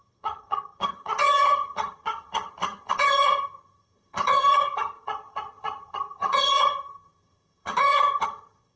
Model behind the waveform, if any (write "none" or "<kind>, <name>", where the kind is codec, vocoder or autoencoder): vocoder, HiFi-GAN